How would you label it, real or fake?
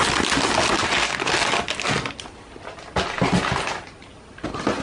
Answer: real